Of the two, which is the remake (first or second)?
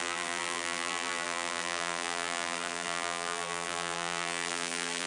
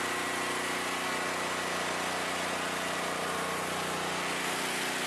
first